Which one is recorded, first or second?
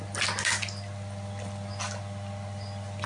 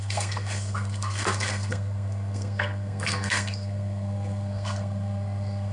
first